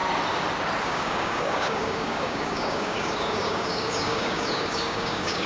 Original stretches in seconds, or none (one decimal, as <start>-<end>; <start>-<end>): 0.0-0.8